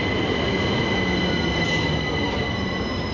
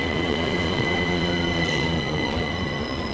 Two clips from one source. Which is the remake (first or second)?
second